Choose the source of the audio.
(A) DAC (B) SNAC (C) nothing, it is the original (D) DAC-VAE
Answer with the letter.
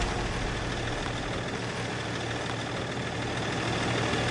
C